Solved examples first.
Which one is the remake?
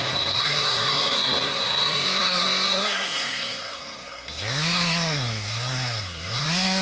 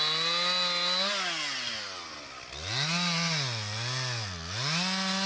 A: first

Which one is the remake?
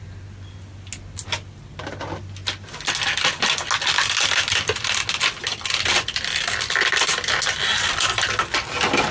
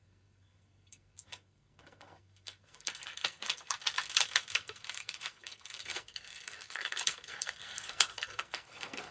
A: second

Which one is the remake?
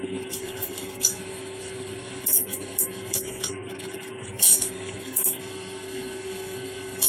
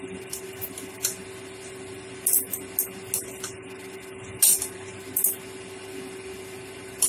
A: first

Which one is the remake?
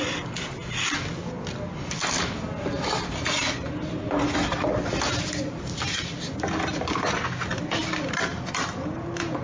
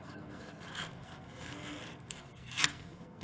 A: second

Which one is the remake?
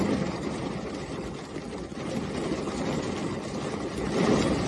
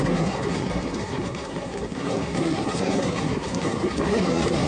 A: second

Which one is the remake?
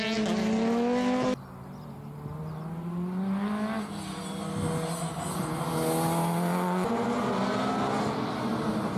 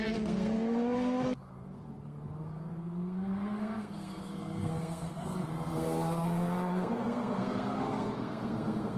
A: second